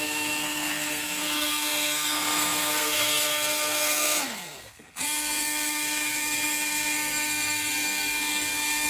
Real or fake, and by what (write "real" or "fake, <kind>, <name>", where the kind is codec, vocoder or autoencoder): fake, codec, SNAC